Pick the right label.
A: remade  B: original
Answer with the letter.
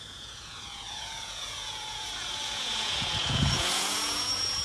A